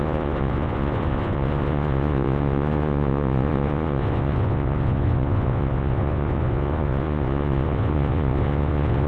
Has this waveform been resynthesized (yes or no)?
yes